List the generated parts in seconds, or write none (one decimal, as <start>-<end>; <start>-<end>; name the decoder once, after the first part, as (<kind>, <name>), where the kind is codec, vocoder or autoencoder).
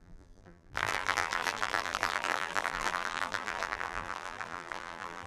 0.0-5.3 (vocoder, BigVGAN v2)